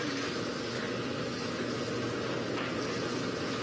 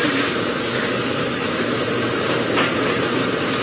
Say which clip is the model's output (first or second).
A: second